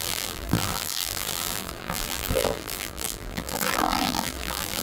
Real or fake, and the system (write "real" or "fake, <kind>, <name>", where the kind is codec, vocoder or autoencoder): fake, vocoder, BigVGAN v2